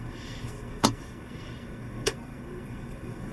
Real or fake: fake